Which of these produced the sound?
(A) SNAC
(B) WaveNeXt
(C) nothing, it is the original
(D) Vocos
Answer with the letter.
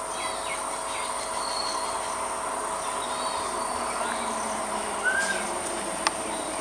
C